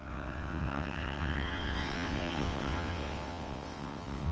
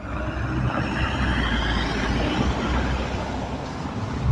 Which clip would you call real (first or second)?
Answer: second